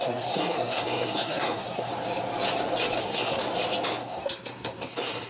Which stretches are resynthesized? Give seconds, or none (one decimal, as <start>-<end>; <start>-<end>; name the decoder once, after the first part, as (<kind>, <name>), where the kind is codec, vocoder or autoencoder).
0.0-1.9 (codec, SNAC); 3.0-3.4; 4.0-5.3